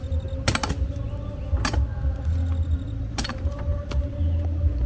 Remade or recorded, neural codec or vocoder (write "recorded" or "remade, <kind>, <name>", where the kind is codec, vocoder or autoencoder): recorded